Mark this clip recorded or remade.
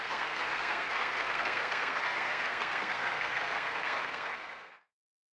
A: remade